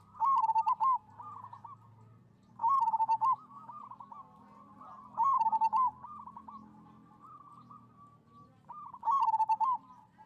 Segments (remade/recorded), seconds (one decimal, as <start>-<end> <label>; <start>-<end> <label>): 0.0-2.6 recorded; 2.6-3.8 remade; 3.8-10.3 recorded